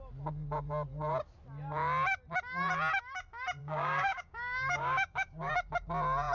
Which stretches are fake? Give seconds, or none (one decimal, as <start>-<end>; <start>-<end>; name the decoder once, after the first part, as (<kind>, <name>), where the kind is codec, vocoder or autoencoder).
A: 3.6-5.5 (codec, DAC)